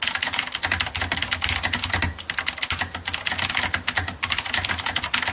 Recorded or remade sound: recorded